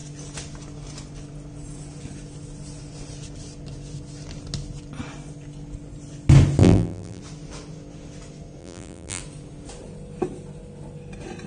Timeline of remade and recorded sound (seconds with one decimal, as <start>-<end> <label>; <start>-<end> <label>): 0.0-6.6 recorded; 6.6-7.2 remade; 7.2-8.6 recorded; 8.6-9.2 remade; 9.2-11.5 recorded